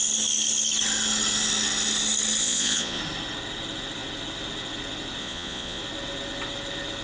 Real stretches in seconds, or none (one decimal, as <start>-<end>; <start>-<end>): 0.0-2.4; 3.0-5.2; 5.8-7.0